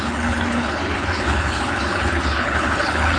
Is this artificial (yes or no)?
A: yes